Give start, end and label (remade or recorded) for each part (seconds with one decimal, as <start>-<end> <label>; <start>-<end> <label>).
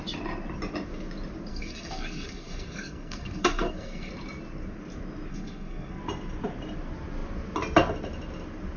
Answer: 0.0-1.5 recorded; 1.5-4.1 remade; 4.1-5.3 recorded; 5.3-6.0 remade; 6.0-8.8 recorded